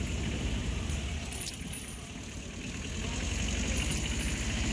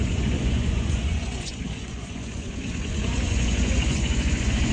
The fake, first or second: second